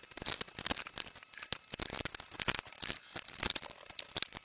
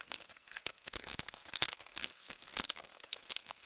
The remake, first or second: second